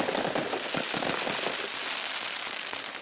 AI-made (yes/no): no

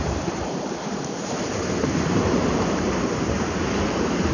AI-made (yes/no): yes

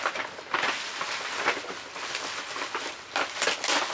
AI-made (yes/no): no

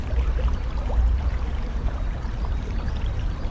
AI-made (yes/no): yes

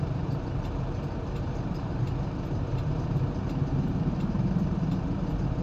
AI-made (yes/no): yes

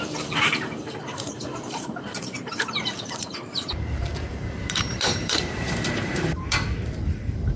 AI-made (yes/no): yes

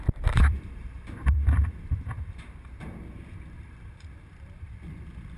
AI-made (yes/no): yes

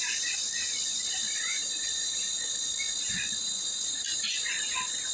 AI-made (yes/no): yes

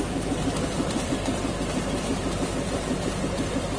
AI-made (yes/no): yes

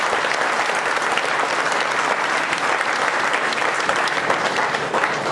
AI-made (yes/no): yes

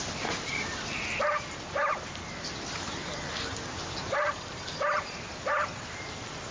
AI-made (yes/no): no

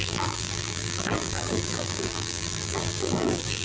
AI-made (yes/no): yes